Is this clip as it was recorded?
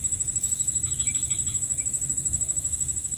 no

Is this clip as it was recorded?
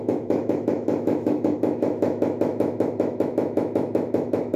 no